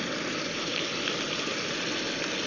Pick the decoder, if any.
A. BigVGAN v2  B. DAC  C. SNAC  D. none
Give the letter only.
D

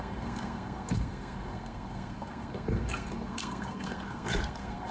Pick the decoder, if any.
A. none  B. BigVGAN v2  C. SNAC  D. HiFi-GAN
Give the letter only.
C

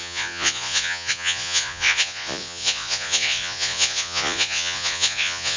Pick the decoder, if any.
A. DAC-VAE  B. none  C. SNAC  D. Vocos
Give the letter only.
D